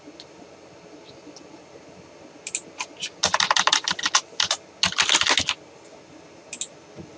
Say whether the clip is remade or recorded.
recorded